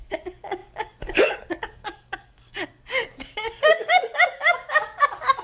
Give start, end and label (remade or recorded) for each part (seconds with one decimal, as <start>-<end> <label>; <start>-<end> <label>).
0.0-5.4 remade